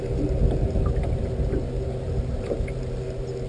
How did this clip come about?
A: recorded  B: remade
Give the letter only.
A